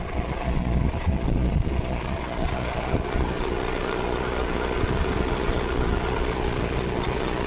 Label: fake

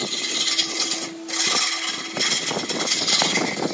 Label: real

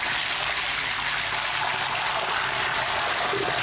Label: real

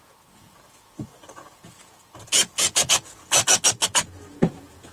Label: fake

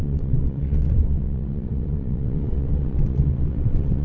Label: fake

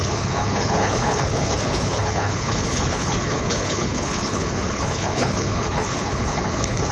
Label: fake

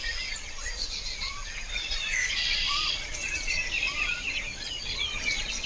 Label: fake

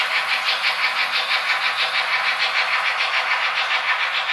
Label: real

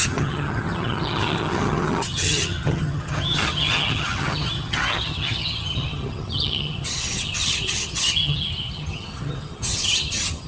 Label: fake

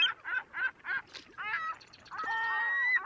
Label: real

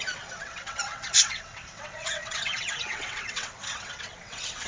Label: fake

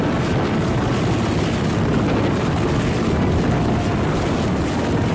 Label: real